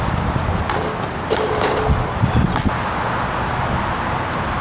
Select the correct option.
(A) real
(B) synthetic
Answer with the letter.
A